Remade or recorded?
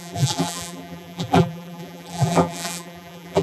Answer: remade